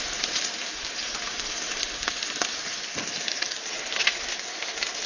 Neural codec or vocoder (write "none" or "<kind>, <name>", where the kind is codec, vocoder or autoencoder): none